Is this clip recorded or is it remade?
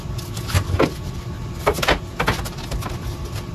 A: recorded